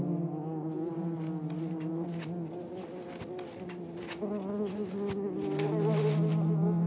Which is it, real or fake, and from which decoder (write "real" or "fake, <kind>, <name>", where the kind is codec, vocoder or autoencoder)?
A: real